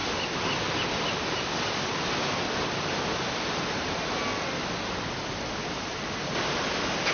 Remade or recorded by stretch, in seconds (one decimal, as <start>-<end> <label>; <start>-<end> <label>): 0.0-5.9 recorded; 5.9-6.5 remade; 6.5-7.1 recorded